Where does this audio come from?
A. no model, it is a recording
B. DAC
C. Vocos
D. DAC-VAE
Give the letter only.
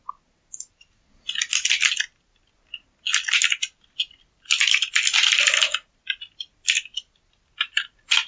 A